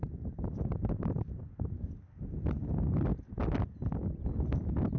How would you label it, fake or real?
real